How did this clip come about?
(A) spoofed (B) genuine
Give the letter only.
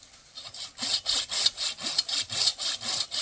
B